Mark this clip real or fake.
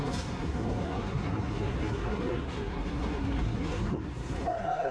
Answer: fake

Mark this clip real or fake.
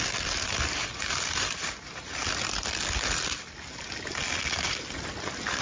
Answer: real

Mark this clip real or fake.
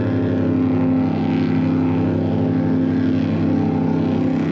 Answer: real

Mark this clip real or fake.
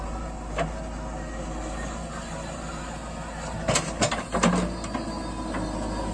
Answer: real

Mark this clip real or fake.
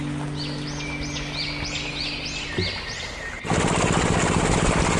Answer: real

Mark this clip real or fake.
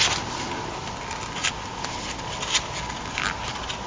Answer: real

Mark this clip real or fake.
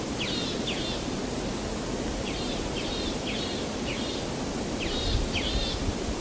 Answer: real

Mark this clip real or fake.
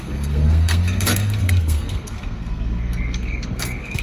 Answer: fake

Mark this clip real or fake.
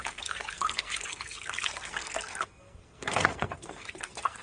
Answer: fake